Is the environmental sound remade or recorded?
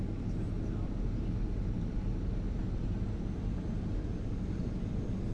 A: recorded